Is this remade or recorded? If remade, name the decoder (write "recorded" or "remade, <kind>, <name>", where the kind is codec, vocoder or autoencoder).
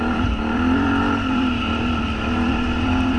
remade, vocoder, BigVGAN v2